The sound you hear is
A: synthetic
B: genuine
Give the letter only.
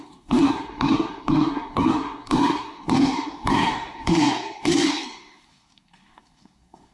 A